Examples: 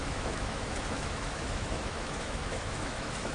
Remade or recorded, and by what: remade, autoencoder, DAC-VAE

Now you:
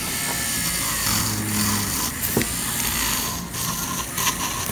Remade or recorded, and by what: recorded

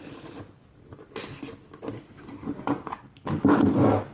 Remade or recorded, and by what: recorded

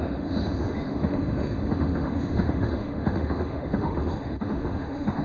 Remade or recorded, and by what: remade, autoencoder, DAC-VAE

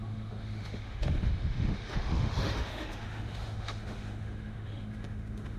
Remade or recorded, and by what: remade, autoencoder, DAC-VAE